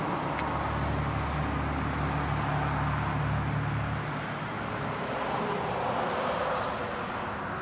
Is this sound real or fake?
real